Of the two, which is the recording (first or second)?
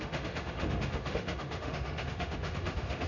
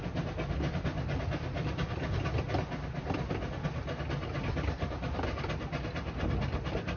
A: second